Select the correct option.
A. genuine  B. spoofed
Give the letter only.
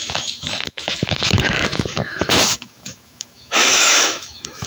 B